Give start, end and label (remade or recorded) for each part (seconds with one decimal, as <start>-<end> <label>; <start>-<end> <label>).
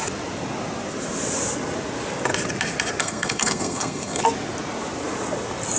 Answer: 0.0-3.0 recorded; 3.0-4.2 remade; 4.2-5.8 recorded